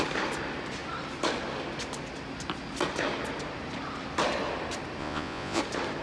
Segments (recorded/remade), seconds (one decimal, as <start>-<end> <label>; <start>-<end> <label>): 0.0-5.0 recorded; 5.0-5.6 remade; 5.6-6.0 recorded

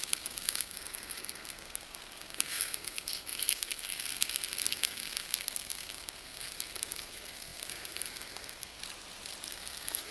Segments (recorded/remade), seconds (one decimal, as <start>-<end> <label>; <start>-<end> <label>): 0.0-8.8 remade; 8.8-9.5 recorded; 9.5-10.1 remade

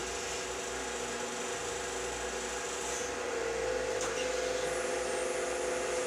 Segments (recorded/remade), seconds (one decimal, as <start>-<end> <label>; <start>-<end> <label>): 0.0-6.1 recorded

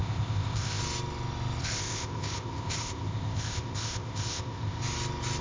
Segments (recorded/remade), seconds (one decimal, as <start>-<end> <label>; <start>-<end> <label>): 0.0-0.8 remade; 0.8-1.6 recorded; 1.6-4.8 remade; 4.8-5.4 recorded

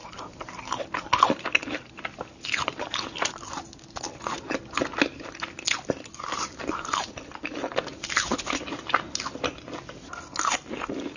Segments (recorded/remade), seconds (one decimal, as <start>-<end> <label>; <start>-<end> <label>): 0.0-11.2 recorded

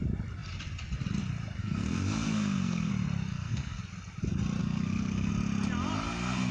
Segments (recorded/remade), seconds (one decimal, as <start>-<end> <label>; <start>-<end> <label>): 0.0-1.6 recorded; 1.6-2.9 remade; 2.9-3.3 recorded; 3.3-3.8 remade; 3.8-4.6 recorded; 4.6-5.3 remade; 5.3-6.5 recorded

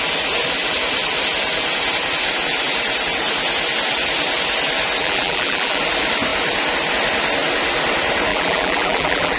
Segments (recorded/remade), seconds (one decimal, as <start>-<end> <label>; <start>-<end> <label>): 0.0-5.0 recorded; 5.0-5.8 remade; 5.8-8.3 recorded; 8.3-9.4 remade

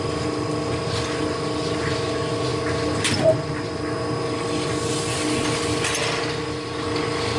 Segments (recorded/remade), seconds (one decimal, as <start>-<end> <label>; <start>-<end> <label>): 0.0-7.4 recorded